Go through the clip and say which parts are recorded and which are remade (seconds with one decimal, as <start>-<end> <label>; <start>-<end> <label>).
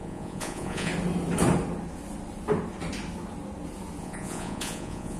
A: 0.0-0.9 remade; 0.9-4.0 recorded; 4.0-5.2 remade